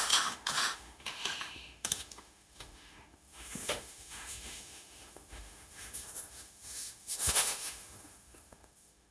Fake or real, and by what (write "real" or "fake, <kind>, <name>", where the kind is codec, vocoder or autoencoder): fake, autoencoder, DAC-VAE